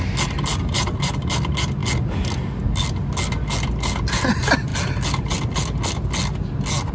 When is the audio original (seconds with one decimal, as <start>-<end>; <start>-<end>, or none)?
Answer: 0.0-6.9